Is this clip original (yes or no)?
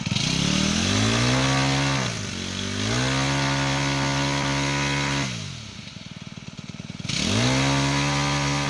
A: yes